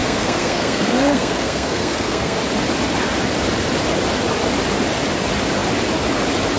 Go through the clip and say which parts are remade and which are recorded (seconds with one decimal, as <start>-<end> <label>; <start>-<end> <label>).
0.0-2.4 remade; 2.4-6.6 recorded